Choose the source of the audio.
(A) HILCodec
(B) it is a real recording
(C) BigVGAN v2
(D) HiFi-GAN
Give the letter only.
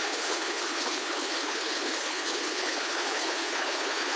A